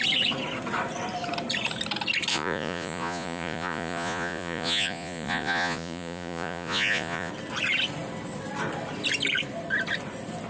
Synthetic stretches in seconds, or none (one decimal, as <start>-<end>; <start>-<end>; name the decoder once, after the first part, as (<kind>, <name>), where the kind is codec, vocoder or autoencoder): 2.3-7.3 (vocoder, Vocos)